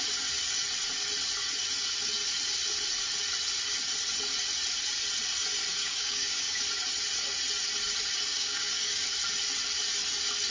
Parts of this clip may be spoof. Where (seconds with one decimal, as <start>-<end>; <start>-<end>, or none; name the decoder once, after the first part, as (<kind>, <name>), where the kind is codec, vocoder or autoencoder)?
5.8-6.6 (codec, DAC); 8.3-9.1